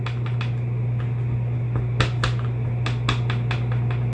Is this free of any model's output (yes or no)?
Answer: yes